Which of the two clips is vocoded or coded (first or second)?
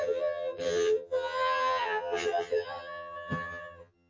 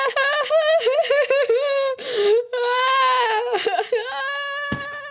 first